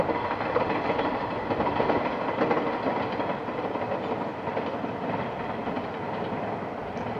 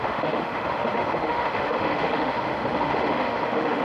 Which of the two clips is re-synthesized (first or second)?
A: second